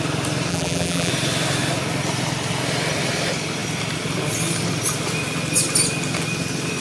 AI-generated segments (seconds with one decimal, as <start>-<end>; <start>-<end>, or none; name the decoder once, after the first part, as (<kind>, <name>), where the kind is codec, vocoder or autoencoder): 0.5-1.1 (vocoder, BigVGAN v2)